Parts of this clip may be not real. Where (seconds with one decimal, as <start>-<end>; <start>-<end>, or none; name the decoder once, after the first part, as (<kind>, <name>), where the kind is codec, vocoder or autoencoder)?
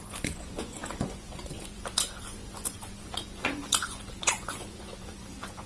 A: 0.0-5.7 (vocoder, Vocos)